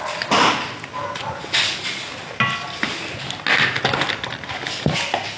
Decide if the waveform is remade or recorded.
recorded